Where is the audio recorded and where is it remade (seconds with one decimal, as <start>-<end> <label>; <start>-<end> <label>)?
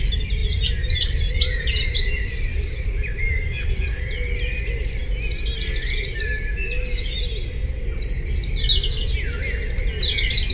0.0-0.4 recorded; 0.4-4.0 remade; 4.0-10.5 recorded